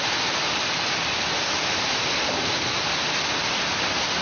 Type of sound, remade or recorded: recorded